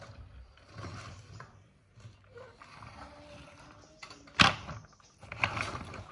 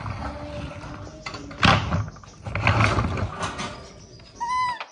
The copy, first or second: first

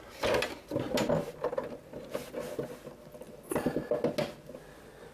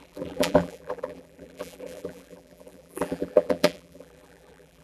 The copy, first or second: second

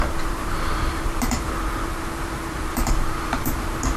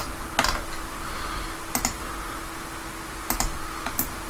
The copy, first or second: first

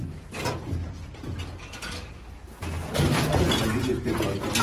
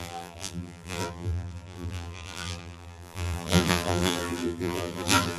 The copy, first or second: second